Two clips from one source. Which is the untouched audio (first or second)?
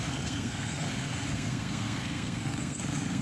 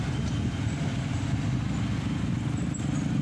second